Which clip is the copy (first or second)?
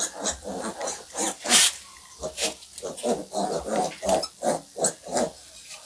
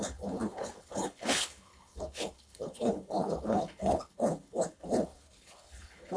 second